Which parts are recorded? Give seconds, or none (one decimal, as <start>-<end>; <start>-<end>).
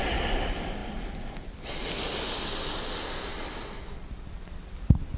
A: 0.0-5.2